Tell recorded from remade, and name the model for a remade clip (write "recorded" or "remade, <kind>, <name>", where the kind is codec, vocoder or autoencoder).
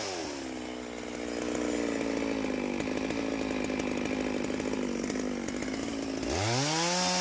recorded